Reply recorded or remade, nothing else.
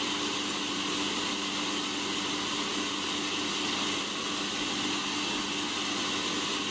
recorded